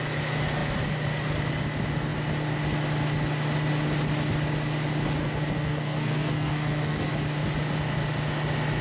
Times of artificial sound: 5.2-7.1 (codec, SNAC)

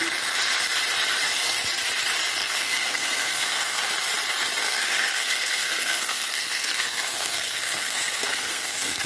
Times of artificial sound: 2.4-3.9 (codec, SNAC); 4.6-9.1

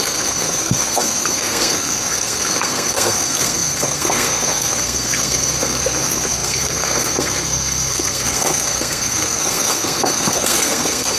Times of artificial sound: 0.0-11.2 (codec, SNAC)

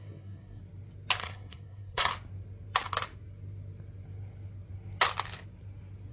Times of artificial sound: 0.0-0.6 (codec, SNAC); 1.2-2.1

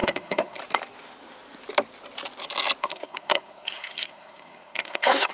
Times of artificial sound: 0.0-0.6 (codec, SNAC); 2.8-5.3

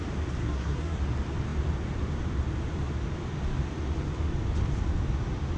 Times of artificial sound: 0.4-1.0 (codec, SNAC)

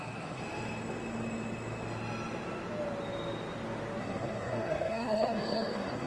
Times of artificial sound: 0.0-0.4 (codec, SNAC); 4.0-6.1

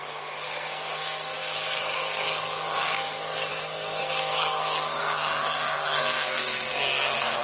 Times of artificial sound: 0.0-7.4 (codec, SNAC)